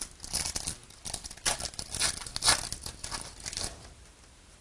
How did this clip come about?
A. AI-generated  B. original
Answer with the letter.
B